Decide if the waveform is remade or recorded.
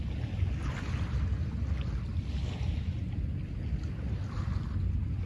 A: recorded